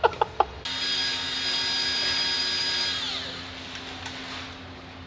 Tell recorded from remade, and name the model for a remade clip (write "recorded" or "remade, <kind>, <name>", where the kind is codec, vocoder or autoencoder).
recorded